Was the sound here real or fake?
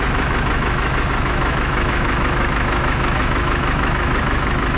fake